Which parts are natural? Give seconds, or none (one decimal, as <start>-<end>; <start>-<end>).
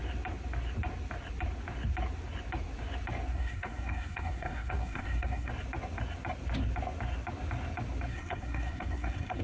0.0-3.3; 5.5-8.1